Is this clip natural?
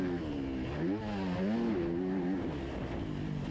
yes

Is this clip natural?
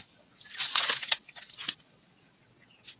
no